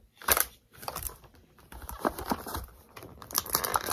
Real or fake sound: fake